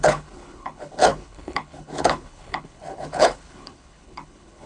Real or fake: fake